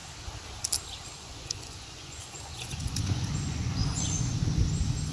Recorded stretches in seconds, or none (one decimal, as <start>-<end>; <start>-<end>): 0.0-1.2; 4.3-5.1